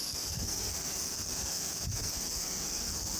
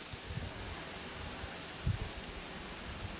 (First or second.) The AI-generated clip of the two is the first